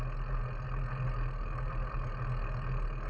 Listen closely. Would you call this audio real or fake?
real